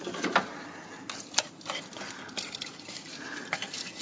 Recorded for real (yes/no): yes